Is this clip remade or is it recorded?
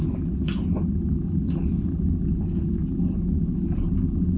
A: recorded